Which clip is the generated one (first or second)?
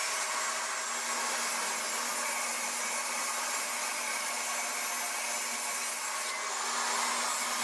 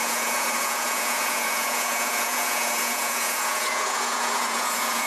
second